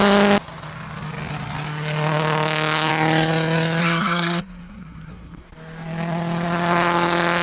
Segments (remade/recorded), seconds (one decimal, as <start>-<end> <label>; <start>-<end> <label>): 0.0-3.8 recorded; 3.8-5.5 remade; 5.5-7.4 recorded